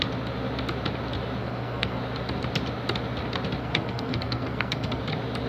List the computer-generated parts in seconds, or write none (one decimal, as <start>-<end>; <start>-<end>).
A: 1.4-2.0; 3.6-5.0

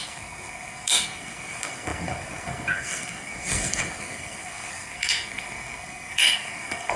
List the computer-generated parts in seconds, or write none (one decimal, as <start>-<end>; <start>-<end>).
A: 0.0-7.0

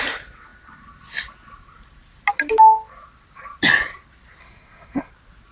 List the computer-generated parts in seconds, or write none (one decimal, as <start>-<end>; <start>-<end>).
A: 4.4-5.1

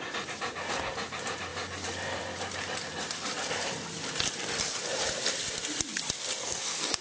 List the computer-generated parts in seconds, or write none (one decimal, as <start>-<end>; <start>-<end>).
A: 6.4-7.0